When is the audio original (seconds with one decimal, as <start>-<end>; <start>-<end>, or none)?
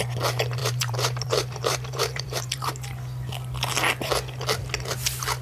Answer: 0.0-0.6; 2.7-5.4